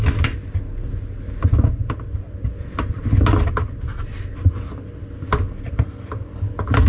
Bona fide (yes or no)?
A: yes